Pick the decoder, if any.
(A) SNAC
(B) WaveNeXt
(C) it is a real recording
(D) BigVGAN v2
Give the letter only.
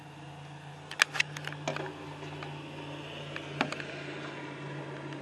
C